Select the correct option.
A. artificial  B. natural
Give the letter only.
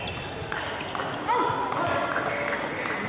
B